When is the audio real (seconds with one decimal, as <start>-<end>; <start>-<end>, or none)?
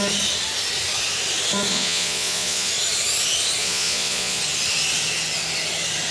0.0-1.7; 2.7-3.6; 4.4-6.1